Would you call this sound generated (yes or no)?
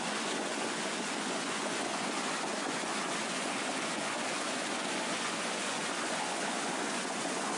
yes